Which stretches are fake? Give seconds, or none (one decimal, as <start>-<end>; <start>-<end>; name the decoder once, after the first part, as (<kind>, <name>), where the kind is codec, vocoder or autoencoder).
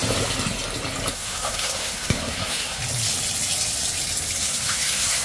1.1-2.8 (codec, SNAC); 4.4-5.2